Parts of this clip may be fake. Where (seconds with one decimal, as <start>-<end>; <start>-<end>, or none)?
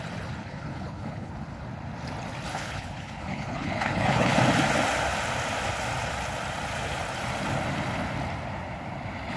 0.4-1.3; 2.5-4.3